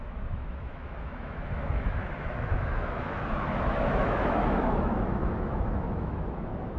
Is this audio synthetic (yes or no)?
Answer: yes